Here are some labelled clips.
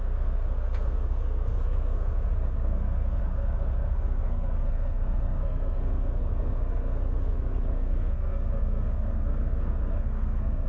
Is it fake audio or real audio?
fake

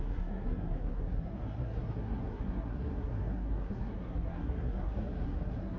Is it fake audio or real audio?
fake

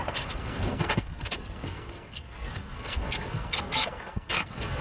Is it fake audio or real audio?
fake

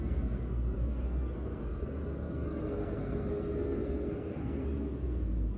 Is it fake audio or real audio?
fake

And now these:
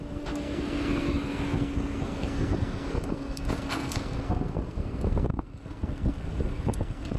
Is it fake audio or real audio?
fake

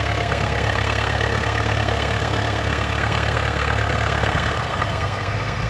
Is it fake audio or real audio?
fake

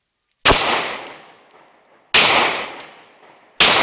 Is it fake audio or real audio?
real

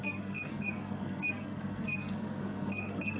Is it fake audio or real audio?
fake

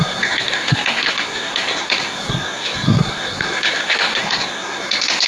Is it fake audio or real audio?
fake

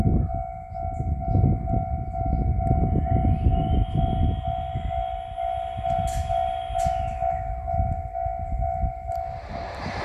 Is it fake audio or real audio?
real